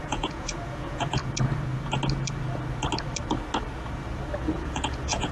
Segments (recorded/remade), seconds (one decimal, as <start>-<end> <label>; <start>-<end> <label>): 0.0-1.2 remade; 1.2-4.4 recorded; 4.4-5.3 remade